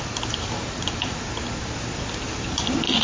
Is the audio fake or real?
real